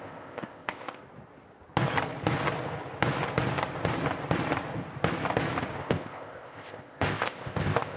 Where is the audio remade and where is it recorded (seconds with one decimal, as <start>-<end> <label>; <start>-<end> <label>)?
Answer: 0.0-1.0 remade; 1.0-5.8 recorded; 5.8-8.0 remade